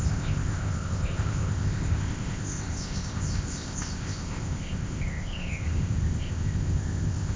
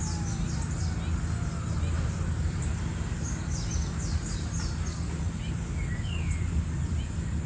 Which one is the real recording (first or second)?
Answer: second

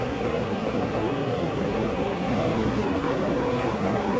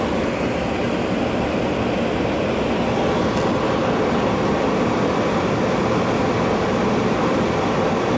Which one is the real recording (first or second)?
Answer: second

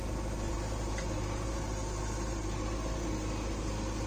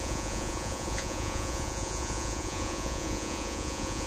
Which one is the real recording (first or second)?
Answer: first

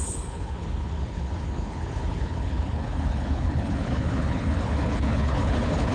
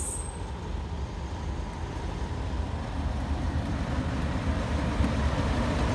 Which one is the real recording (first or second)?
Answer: second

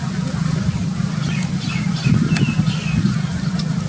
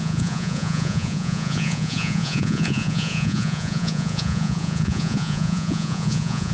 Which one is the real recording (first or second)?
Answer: first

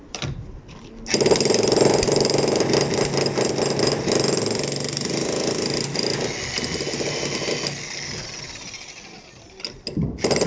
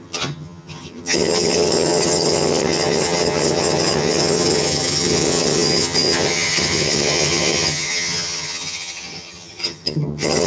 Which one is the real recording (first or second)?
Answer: first